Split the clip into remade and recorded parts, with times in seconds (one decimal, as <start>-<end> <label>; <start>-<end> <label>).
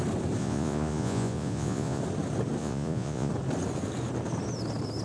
0.0-0.4 recorded; 0.4-2.0 remade; 2.0-2.6 recorded; 2.6-3.3 remade; 3.3-5.0 recorded